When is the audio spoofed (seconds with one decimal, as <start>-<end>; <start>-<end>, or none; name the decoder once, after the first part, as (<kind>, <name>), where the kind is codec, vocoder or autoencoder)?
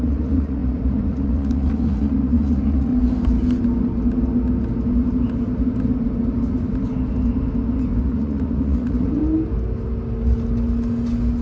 0.0-2.9 (vocoder, Vocos); 8.0-9.2